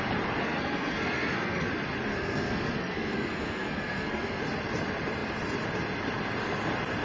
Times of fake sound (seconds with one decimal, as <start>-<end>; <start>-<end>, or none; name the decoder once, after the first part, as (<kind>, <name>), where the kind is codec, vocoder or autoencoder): 0.4-1.7 (codec, SNAC); 2.1-4.4